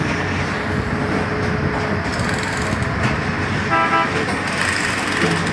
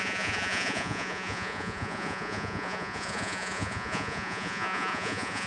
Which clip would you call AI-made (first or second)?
second